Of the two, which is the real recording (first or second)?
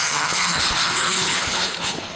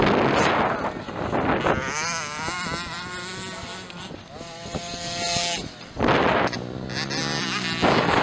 second